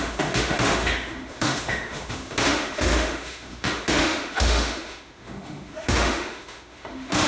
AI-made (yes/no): yes